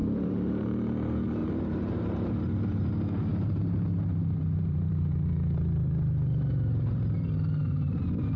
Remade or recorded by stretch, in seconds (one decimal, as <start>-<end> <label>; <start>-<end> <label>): 0.0-0.9 remade; 0.9-1.4 recorded; 1.4-2.9 remade; 2.9-3.3 recorded; 3.3-8.0 remade; 8.0-8.4 recorded